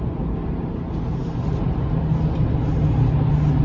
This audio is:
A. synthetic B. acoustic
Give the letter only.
B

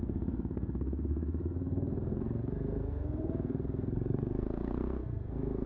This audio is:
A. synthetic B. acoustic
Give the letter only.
A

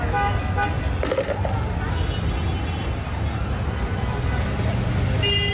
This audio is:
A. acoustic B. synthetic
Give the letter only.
A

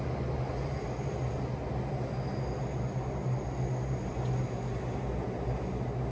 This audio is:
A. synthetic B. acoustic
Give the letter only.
B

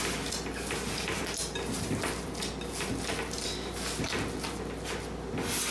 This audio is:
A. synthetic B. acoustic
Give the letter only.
B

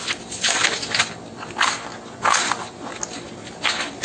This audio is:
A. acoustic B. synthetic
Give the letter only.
A